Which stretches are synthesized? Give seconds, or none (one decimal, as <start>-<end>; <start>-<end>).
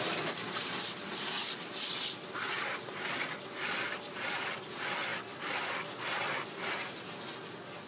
none